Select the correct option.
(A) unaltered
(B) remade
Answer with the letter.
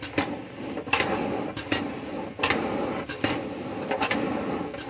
A